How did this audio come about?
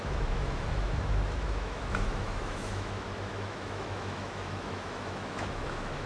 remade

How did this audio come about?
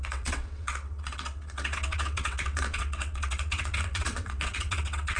remade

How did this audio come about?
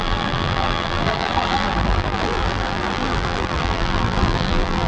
remade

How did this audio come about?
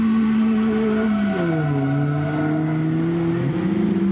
recorded